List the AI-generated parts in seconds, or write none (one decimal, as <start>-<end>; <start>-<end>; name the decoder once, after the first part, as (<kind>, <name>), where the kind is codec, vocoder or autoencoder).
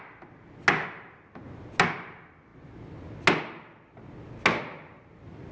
none